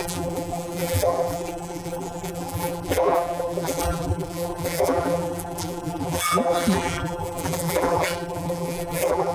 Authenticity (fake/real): fake